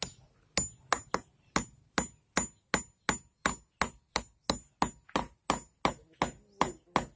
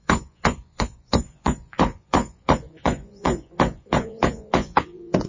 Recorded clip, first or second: first